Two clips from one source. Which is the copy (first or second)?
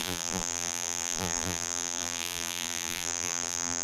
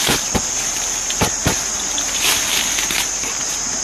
first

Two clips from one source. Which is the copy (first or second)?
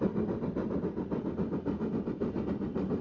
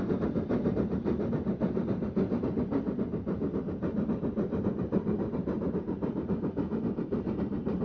second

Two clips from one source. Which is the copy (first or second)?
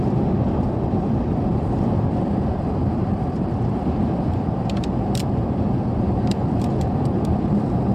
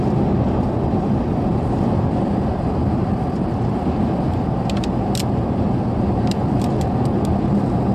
first